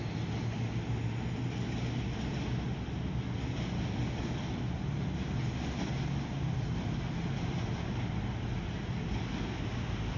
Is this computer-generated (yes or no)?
no